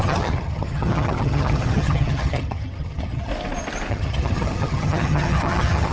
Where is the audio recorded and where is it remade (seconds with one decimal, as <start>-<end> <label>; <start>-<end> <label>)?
0.0-3.3 remade; 3.3-3.9 recorded; 3.9-5.9 remade